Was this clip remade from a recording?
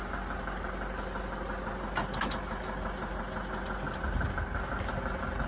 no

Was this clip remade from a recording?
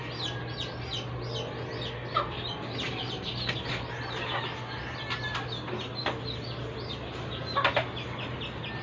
no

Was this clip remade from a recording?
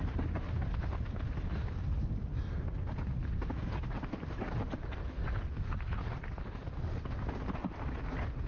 no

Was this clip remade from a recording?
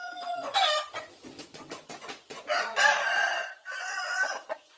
yes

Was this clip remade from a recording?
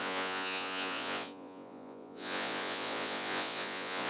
yes